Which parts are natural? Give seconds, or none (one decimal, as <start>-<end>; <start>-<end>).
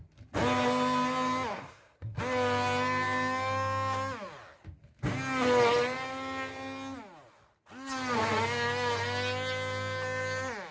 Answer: 0.0-1.5; 2.2-10.7